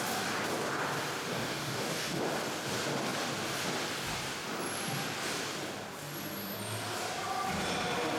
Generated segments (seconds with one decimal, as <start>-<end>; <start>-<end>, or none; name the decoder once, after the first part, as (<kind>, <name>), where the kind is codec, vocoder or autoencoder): 1.3-2.2 (codec, DAC)